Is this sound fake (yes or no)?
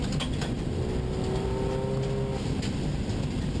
no